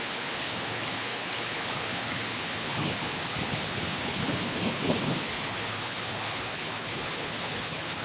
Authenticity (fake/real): fake